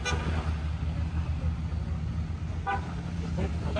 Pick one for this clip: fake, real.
real